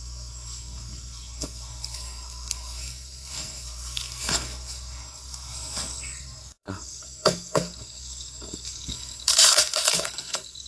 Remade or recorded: remade